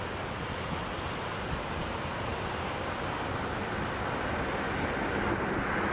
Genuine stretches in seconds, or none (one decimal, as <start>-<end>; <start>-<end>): 0.0-5.9